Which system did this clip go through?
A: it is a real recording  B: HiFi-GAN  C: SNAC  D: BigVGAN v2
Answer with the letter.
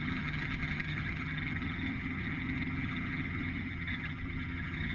B